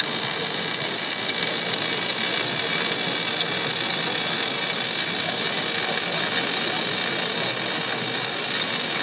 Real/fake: real